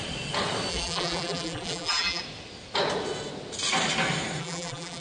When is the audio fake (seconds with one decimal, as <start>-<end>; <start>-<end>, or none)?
0.7-2.2; 4.4-5.0